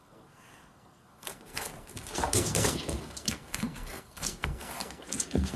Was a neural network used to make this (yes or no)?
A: yes